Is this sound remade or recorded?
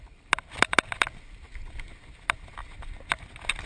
recorded